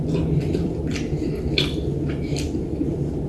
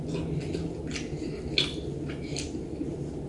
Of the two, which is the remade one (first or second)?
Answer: first